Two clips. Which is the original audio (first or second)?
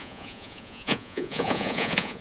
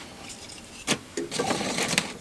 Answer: second